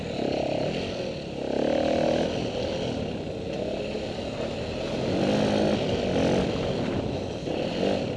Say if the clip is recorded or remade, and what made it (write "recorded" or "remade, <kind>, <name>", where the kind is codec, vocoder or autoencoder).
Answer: recorded